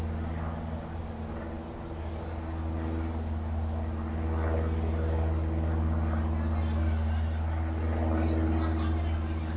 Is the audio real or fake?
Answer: real